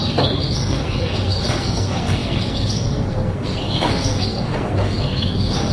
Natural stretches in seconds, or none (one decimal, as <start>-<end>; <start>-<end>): none